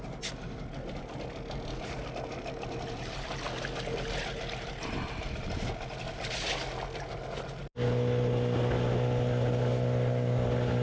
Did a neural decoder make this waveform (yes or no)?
no